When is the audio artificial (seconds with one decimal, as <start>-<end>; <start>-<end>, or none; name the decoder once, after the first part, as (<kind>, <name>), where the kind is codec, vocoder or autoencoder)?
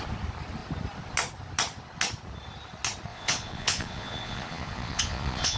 3.1-5.6 (vocoder, Vocos)